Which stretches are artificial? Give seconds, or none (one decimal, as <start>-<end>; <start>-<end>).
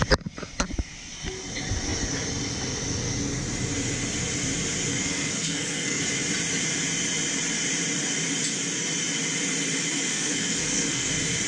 4.9-6.0; 10.1-11.1